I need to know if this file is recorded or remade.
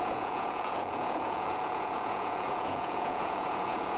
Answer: remade